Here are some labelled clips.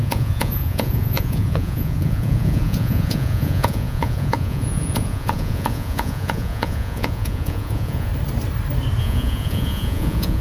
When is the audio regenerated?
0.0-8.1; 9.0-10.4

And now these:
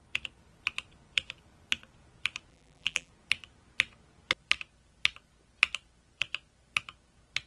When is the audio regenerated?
2.5-3.1

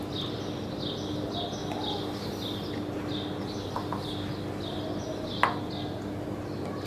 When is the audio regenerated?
none

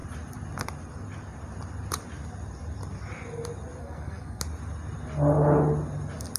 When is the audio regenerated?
3.8-4.4

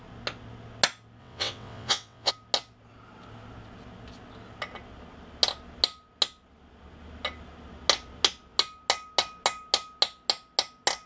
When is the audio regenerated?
1.2-2.3

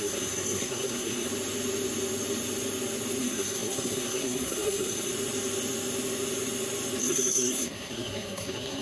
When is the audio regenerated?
0.0-1.3; 3.2-5.1; 7.0-8.8

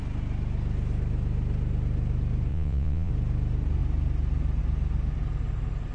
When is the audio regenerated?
2.5-3.1